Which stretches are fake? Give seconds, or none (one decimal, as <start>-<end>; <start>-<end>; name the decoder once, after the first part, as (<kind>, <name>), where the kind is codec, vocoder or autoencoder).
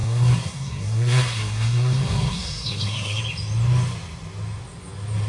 0.0-3.2 (codec, SNAC)